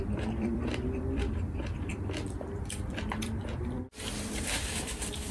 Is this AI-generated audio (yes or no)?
yes